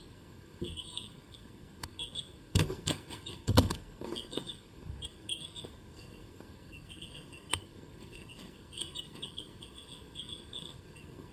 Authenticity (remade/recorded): remade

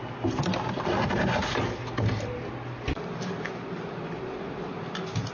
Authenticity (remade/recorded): recorded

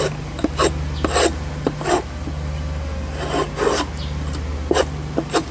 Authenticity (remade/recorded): recorded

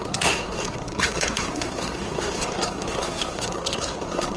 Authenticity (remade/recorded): remade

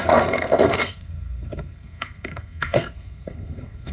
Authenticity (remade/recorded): remade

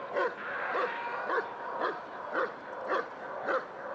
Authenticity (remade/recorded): recorded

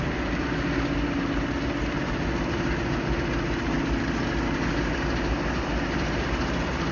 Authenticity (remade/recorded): recorded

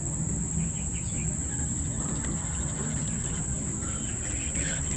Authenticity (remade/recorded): recorded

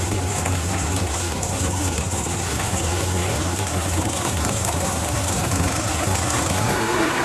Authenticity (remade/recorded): remade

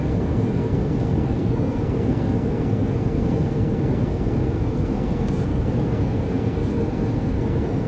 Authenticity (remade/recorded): remade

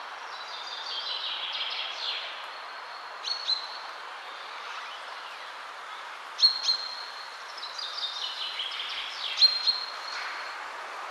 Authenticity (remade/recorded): recorded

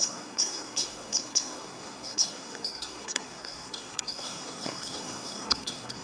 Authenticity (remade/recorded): remade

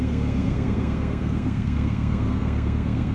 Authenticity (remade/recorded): remade